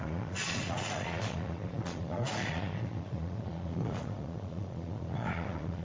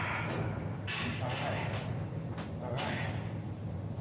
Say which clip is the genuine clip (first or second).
second